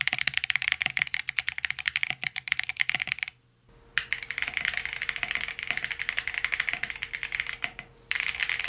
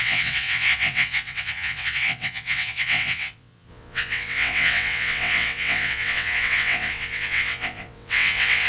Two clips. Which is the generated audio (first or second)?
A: second